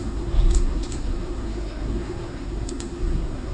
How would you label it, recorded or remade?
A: remade